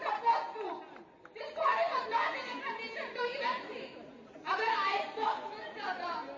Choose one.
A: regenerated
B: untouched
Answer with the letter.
B